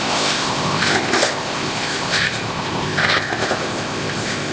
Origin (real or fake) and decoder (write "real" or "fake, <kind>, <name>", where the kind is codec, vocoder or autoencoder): fake, codec, ZipCodec